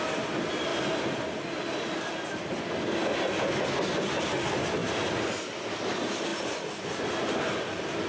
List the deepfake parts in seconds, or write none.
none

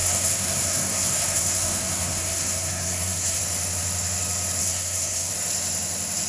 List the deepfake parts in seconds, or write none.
0.0-3.4; 4.6-5.3

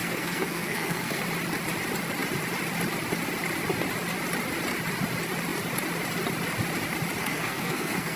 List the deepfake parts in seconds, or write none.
0.0-1.2; 7.2-8.2

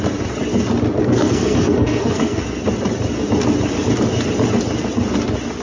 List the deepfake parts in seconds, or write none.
1.0-2.4

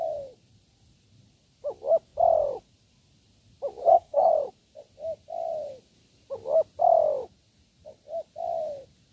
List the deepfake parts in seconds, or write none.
3.8-4.3

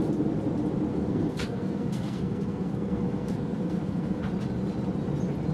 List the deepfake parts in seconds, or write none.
0.9-4.2

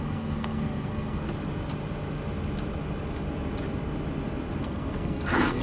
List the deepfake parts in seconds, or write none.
0.0-1.2; 4.6-5.6

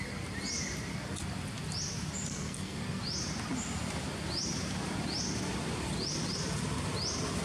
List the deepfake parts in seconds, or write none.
2.3-3.0